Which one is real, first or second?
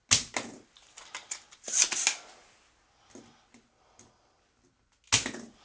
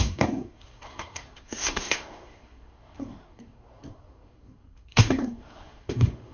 first